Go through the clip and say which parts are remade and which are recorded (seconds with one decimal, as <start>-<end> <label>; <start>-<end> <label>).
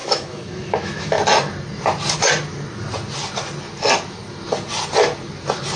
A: 0.0-1.2 remade; 1.2-5.8 recorded